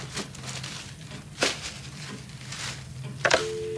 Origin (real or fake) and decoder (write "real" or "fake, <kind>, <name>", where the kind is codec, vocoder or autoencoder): real